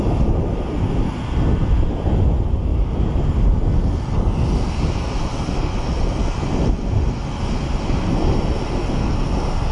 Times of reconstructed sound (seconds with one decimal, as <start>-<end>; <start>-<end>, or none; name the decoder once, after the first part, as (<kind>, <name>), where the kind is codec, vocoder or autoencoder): none